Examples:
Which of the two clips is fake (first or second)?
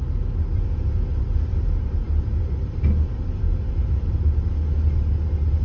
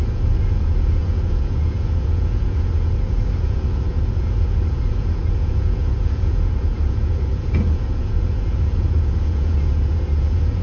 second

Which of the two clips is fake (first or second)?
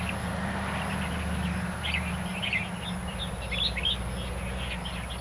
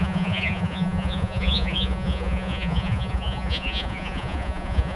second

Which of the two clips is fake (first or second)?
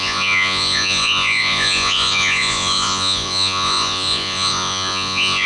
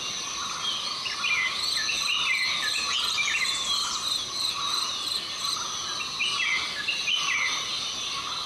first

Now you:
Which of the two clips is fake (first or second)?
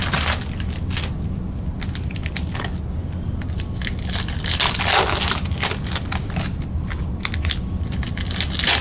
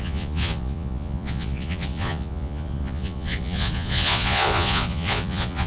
second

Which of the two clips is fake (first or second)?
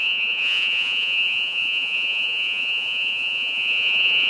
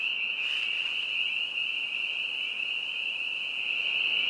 first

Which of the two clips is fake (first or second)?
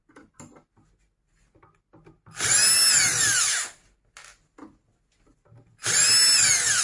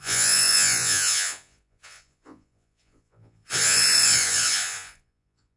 second